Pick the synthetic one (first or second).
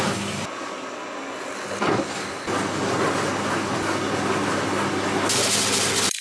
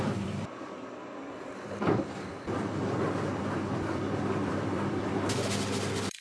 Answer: second